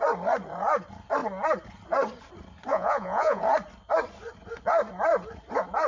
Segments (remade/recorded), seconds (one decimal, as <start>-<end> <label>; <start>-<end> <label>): 0.0-2.7 recorded; 2.7-3.4 remade; 3.4-5.9 recorded